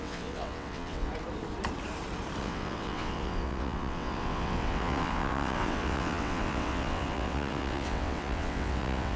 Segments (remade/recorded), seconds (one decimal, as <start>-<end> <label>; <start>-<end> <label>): 0.0-1.1 remade; 1.1-2.4 recorded; 2.4-9.2 remade